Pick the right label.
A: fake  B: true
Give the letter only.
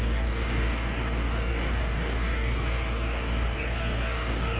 A